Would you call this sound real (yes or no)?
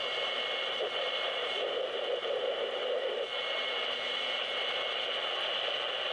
yes